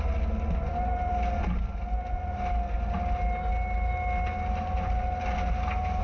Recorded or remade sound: recorded